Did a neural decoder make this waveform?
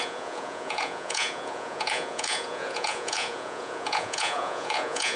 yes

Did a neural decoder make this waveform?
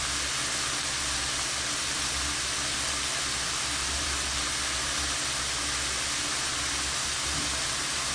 no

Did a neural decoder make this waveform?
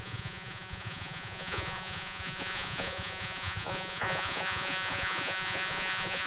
yes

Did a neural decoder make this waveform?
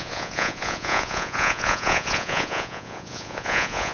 yes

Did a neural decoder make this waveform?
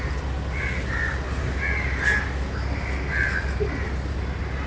no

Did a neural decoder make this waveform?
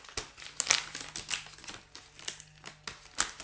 no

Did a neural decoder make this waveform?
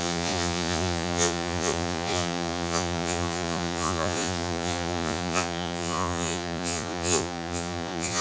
yes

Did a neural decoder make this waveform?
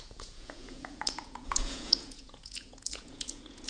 yes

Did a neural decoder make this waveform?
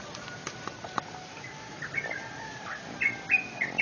no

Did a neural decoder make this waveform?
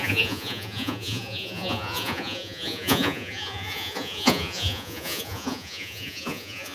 yes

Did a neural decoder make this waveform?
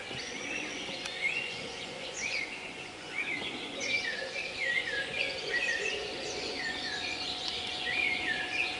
yes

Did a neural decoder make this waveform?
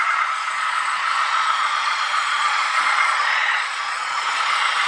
yes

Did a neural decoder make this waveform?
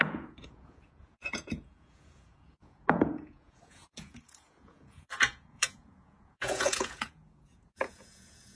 yes